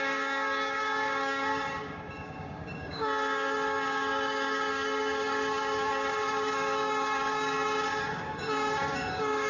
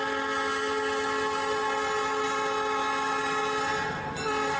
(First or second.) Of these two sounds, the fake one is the first